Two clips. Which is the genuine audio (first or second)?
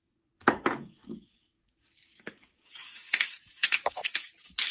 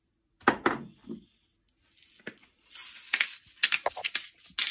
second